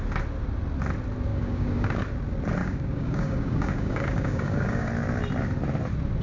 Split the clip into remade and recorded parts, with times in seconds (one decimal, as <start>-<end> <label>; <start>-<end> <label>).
0.0-1.3 recorded; 1.3-2.0 remade; 2.0-2.6 recorded; 2.6-4.9 remade; 4.9-6.2 recorded